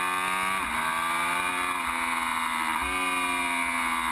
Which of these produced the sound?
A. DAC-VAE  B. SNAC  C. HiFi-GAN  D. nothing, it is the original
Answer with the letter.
D